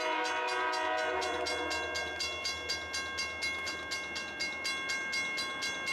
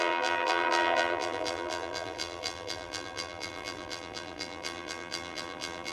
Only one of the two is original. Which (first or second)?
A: first